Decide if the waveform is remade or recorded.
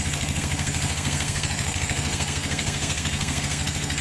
remade